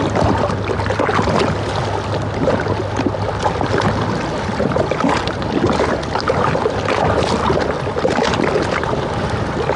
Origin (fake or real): real